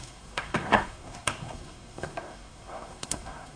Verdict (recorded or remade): remade